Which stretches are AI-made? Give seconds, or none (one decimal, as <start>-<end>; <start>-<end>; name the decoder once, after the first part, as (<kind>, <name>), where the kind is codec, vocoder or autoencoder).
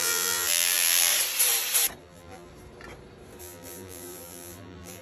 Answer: 0.0-1.1 (vocoder, BigVGAN v2); 2.0-2.5; 3.4-5.0